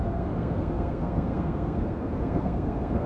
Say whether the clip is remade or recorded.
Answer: remade